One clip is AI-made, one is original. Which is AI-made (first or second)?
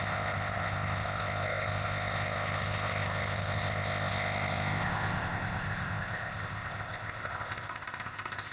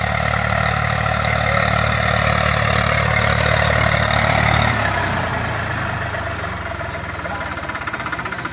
first